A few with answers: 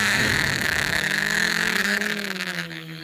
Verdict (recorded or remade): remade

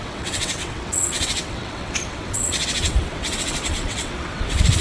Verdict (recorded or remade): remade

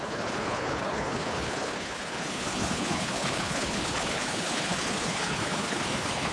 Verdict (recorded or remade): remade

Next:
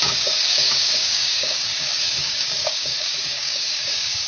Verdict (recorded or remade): remade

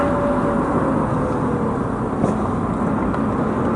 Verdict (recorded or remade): recorded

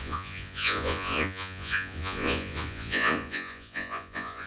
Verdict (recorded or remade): remade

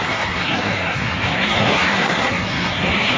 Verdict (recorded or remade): remade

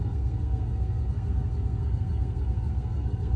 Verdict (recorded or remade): remade